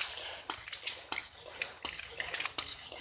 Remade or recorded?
recorded